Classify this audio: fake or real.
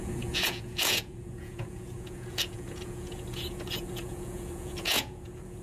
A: fake